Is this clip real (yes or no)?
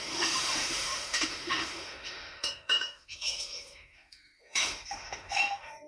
no